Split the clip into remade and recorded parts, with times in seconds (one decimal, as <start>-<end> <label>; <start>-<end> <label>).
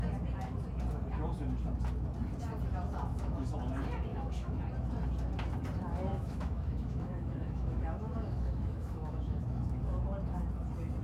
0.0-3.1 recorded; 3.1-3.6 remade; 3.6-4.1 recorded; 4.1-4.6 remade; 4.6-6.1 recorded; 6.1-9.8 remade; 9.8-11.0 recorded